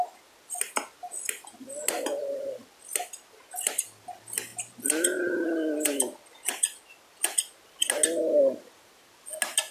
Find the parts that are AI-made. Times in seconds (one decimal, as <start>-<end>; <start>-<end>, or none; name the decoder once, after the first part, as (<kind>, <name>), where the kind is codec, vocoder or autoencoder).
none